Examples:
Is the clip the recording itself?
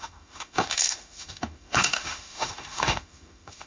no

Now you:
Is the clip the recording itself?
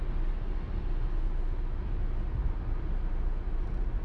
yes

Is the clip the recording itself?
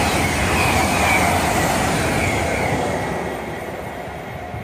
yes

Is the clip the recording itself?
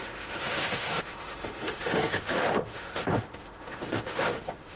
no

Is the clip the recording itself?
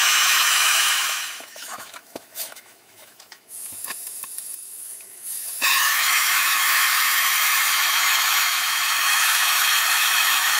no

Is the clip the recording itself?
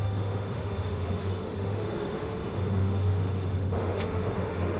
no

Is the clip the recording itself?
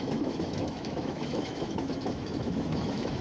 no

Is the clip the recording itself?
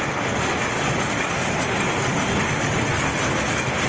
yes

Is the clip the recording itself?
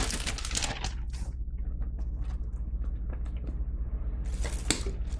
yes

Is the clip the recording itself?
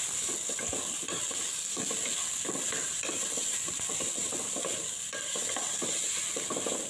yes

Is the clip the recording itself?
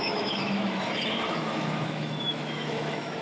no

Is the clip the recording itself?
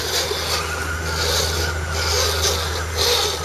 yes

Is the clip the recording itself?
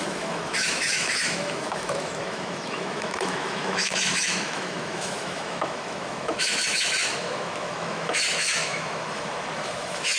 no